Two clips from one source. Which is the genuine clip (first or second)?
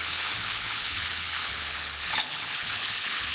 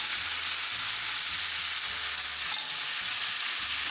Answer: second